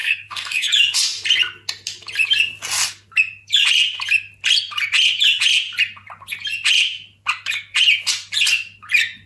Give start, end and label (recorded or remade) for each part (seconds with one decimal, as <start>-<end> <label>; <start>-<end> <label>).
0.0-0.7 remade; 0.7-9.3 recorded